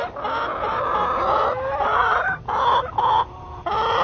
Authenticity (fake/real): real